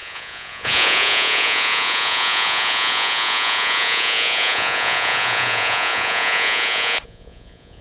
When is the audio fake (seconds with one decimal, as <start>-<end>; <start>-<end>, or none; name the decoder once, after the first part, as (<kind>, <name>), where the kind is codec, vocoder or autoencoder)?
0.0-7.8 (vocoder, Vocos)